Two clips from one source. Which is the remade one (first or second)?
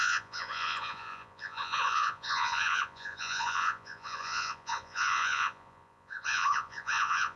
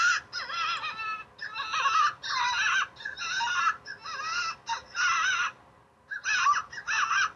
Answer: first